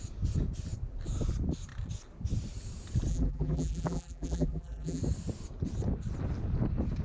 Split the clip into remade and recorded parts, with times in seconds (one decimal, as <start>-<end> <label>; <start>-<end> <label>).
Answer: 0.0-3.1 recorded; 3.1-5.0 remade; 5.0-7.0 recorded